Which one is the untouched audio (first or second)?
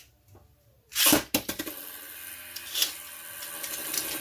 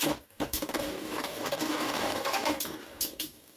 first